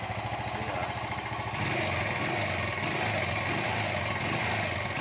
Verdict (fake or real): real